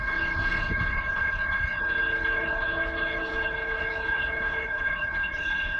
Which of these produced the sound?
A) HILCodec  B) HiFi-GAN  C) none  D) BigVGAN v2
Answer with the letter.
A